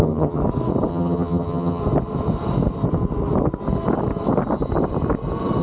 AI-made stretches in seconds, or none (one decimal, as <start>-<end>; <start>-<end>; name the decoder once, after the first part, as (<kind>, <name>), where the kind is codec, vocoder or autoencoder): 0.0-0.4 (vocoder, HiFi-GAN); 0.9-1.8